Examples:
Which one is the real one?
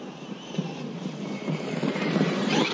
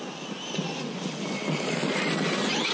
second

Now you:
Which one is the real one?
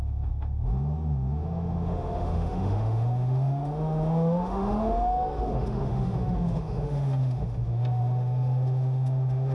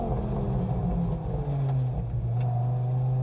second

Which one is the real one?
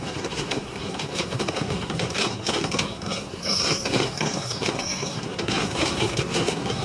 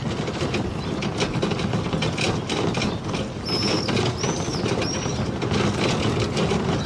second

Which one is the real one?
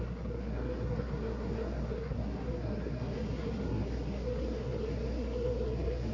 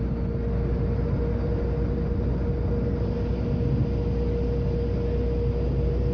second